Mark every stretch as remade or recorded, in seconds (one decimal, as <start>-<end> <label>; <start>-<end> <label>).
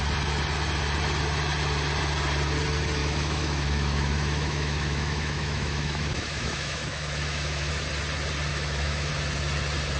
0.0-3.0 recorded; 3.0-7.7 remade; 7.7-8.5 recorded; 8.5-9.1 remade; 9.1-10.0 recorded